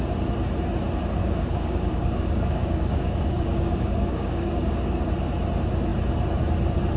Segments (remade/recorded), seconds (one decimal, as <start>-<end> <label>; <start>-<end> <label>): 0.0-1.2 recorded; 1.2-4.7 remade; 4.7-7.0 recorded